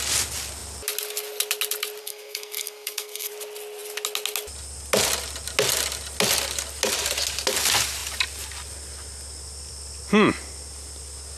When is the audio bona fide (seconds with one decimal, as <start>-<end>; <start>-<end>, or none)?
0.0-2.0; 3.3-11.4